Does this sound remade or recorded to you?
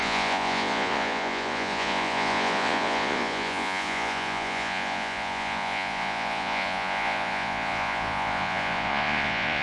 remade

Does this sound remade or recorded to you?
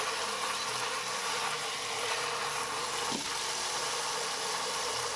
recorded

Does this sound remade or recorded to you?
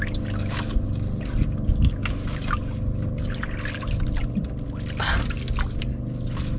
recorded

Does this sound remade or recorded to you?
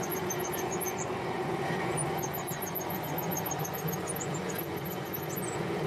remade